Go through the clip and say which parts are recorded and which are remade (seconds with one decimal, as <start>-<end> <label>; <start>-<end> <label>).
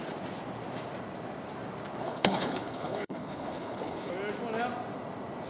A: 0.0-2.0 recorded; 2.0-4.1 remade; 4.1-5.5 recorded